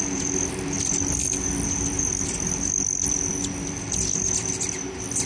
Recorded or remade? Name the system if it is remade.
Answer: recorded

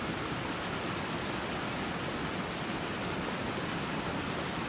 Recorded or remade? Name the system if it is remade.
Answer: recorded